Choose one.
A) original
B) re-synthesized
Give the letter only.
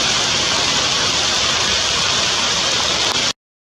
A